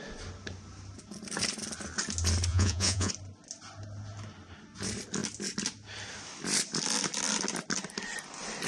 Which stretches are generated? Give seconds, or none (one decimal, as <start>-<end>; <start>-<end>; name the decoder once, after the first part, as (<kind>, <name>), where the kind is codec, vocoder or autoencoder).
2.5-3.1 (vocoder, Vocos)